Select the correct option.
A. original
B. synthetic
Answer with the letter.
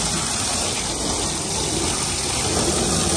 A